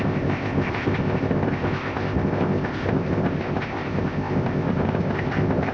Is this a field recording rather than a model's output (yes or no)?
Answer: no